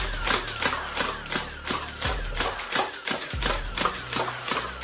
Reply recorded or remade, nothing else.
recorded